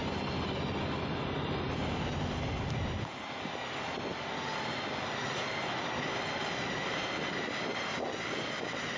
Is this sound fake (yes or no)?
no